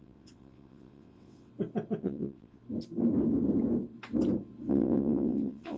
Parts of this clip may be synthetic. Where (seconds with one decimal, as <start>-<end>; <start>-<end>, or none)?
0.0-1.5; 2.0-2.6; 4.7-5.8